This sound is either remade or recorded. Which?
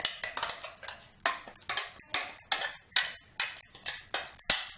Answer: recorded